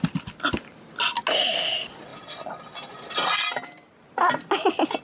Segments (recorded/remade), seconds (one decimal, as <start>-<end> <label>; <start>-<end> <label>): 0.0-5.0 recorded